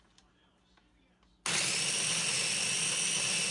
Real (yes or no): yes